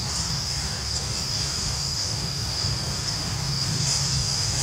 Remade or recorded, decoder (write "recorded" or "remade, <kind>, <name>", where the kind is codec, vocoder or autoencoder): remade, codec, DAC